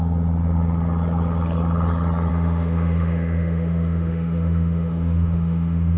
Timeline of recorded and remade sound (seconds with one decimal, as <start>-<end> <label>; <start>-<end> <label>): 0.0-2.3 recorded; 2.3-6.0 remade